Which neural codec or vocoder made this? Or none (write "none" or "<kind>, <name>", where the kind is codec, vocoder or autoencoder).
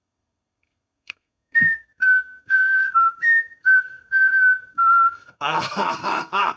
codec, SNAC